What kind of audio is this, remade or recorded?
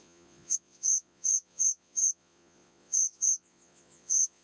remade